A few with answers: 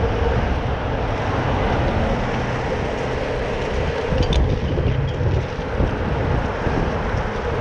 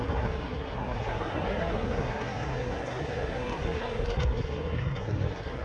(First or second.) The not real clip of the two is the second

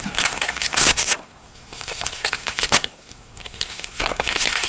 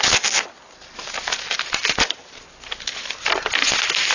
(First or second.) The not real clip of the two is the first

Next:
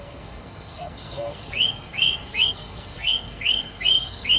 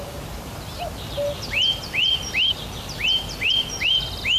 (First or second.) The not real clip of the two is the first